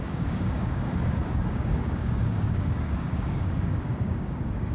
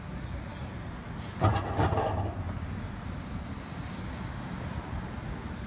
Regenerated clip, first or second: first